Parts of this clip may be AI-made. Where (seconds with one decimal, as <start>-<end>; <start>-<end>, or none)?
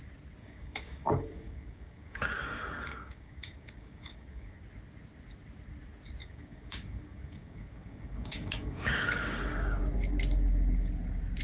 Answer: 0.4-4.6; 6.2-9.8